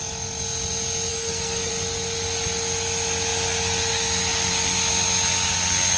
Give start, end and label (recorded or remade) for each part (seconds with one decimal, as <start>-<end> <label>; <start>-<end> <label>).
0.0-1.1 recorded; 1.1-1.7 remade; 1.7-6.0 recorded